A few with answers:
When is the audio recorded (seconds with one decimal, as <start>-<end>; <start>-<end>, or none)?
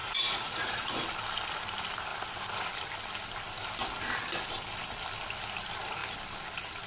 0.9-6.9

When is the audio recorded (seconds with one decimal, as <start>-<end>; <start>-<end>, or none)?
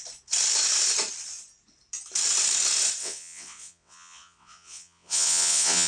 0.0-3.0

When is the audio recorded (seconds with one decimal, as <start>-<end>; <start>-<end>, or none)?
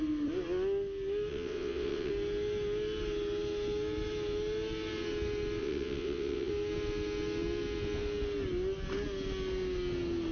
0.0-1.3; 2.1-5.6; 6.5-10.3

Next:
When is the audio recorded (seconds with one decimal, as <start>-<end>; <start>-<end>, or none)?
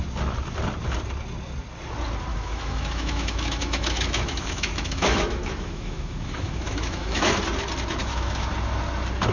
0.0-2.3; 7.3-8.0; 8.5-9.3